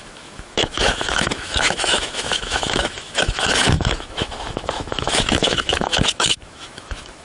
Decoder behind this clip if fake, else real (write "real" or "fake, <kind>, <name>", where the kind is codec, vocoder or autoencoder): fake, autoencoder, DAC-VAE